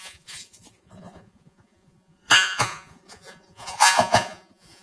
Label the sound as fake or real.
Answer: fake